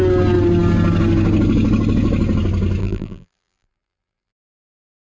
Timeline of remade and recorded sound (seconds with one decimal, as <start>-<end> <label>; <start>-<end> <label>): 0.0-2.8 recorded; 2.8-4.4 remade; 4.4-5.0 recorded